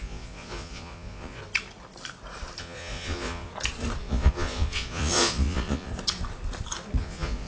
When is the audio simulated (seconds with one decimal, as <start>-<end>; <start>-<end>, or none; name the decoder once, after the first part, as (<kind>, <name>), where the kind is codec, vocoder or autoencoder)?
0.0-1.4 (vocoder, Vocos); 2.6-3.5; 4.0-5.9; 7.0-7.5

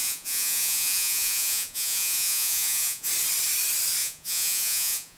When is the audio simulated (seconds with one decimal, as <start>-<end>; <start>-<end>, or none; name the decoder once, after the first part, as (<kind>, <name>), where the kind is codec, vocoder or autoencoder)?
0.0-3.1 (vocoder, Vocos); 4.0-5.2

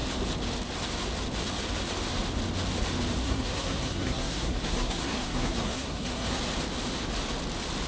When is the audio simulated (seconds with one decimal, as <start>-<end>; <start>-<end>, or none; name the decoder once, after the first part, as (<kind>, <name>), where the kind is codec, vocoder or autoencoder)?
3.2-6.4 (codec, SNAC)

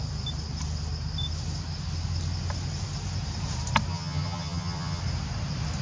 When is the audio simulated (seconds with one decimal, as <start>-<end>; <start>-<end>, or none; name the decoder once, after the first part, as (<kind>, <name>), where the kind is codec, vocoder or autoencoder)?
3.9-5.0 (vocoder, HiFi-GAN)

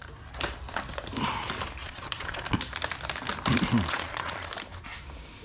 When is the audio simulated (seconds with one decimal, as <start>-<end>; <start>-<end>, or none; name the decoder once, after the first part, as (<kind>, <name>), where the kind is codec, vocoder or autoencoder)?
1.8-2.4 (vocoder, Vocos); 3.9-4.5

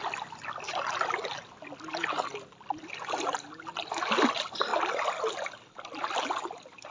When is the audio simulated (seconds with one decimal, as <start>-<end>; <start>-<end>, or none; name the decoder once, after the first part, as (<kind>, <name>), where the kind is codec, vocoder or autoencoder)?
none

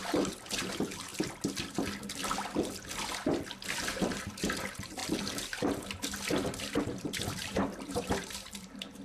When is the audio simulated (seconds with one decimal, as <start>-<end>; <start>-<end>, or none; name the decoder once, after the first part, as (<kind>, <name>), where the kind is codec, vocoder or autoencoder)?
0.0-1.1 (vocoder, BigVGAN v2); 3.7-5.0; 6.8-9.0